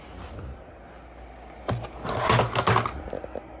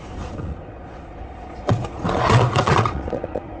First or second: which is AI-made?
second